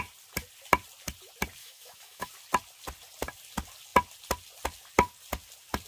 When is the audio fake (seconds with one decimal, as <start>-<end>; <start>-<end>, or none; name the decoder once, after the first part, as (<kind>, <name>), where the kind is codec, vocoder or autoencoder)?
1.6-2.3 (autoencoder, DAC-VAE)